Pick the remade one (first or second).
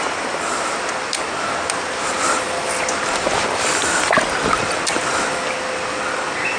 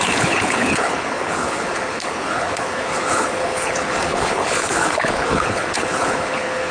second